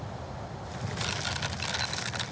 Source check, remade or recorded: recorded